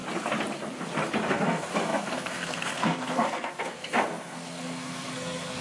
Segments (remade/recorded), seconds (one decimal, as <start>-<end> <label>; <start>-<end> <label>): 0.0-1.3 recorded; 1.3-5.6 remade